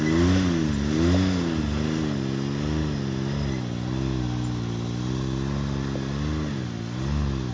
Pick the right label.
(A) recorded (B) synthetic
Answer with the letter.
A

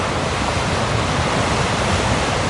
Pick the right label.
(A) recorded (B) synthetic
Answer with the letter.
A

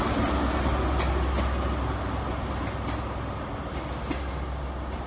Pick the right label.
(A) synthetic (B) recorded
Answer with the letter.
B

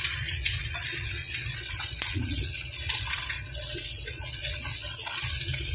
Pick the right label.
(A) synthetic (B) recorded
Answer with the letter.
A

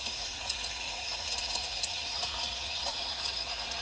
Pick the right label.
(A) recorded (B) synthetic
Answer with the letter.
B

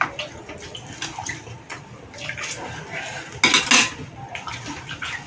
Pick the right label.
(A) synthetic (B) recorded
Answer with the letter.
B